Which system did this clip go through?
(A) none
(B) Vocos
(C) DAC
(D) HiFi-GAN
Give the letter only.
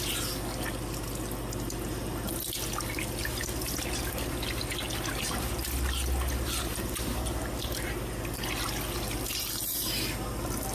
A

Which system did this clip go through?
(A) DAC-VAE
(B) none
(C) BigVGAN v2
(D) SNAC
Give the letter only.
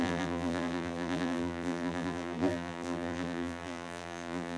C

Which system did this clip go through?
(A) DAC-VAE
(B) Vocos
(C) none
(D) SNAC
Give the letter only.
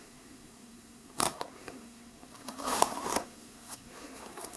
D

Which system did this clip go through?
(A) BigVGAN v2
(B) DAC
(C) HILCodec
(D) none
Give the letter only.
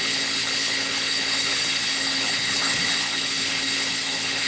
C